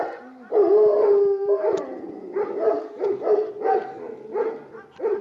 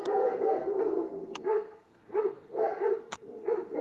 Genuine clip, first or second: first